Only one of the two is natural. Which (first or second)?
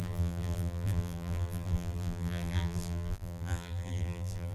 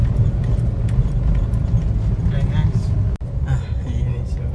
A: second